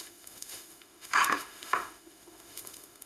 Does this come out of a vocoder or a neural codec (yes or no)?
yes